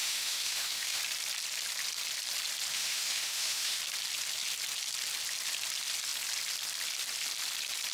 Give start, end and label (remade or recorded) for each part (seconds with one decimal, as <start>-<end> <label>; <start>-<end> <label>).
0.0-1.0 remade; 1.0-2.7 recorded; 2.7-3.8 remade; 3.8-7.9 recorded